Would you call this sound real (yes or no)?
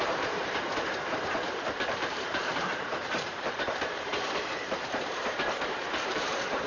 no